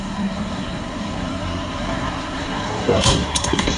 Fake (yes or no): yes